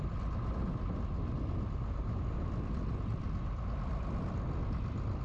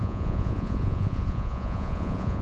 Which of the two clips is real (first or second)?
first